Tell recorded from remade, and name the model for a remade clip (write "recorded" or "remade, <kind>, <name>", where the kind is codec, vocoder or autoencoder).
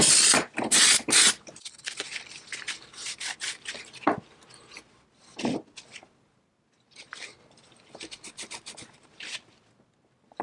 recorded